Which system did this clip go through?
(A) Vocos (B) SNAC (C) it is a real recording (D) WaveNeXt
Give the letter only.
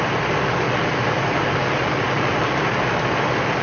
C